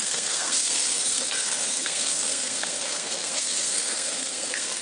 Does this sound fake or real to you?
fake